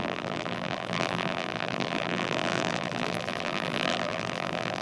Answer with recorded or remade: remade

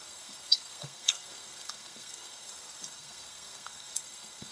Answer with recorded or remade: remade